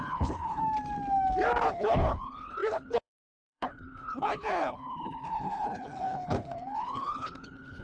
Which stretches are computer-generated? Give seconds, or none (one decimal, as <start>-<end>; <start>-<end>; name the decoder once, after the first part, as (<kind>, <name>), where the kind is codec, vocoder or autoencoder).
0.0-0.6 (codec, HILCodec); 1.7-7.8